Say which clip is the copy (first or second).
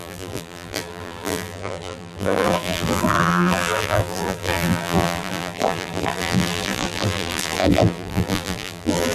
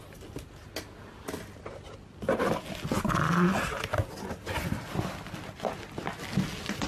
first